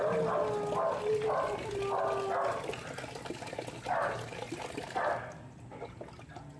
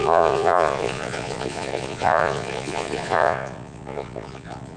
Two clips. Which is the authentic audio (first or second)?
first